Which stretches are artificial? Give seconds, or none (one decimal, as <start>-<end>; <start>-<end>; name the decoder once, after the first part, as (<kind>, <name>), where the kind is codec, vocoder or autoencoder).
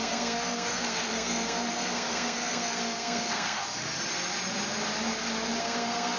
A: 0.0-3.6 (codec, SNAC); 5.6-6.2